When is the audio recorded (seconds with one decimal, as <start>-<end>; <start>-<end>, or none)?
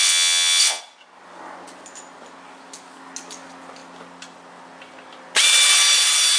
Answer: 0.8-6.4